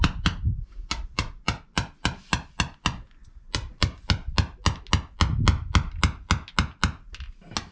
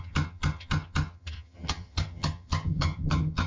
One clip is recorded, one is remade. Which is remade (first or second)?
second